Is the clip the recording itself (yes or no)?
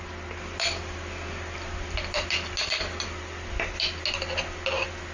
yes